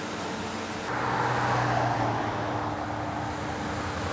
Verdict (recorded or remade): recorded